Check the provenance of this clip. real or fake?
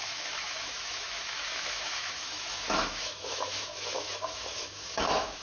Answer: fake